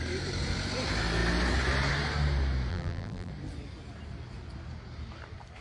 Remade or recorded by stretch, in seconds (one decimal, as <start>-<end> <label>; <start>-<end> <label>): 0.0-2.7 recorded; 2.7-3.3 remade; 3.3-5.6 recorded